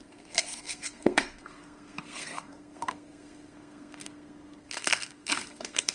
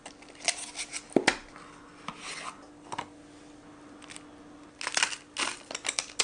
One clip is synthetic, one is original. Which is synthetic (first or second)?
first